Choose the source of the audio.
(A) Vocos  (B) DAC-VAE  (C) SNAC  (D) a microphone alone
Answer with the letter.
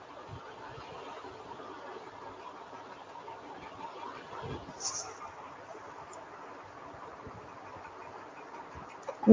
D